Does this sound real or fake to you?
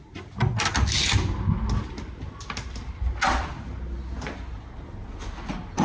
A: real